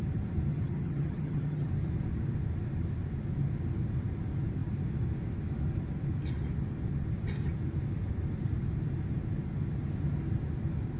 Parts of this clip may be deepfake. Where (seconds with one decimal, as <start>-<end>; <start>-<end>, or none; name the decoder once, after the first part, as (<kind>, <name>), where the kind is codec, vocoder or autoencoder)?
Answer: 0.5-1.7 (vocoder, HiFi-GAN)